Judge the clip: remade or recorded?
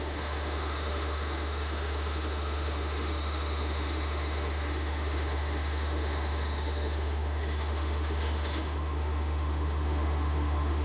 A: remade